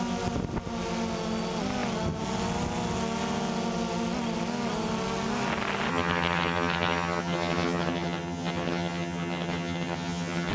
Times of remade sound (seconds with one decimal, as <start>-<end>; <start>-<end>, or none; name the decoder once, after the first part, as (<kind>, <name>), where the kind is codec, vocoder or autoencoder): 5.9-10.5 (vocoder, HiFi-GAN)